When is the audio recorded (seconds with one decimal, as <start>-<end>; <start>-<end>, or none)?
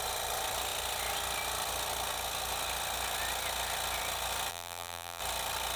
0.0-4.5; 5.2-5.8